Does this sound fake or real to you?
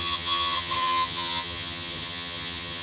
fake